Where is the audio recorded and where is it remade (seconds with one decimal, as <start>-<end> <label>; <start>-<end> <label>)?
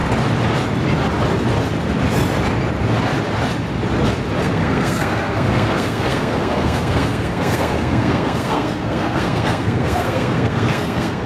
0.0-4.4 recorded; 4.4-11.3 remade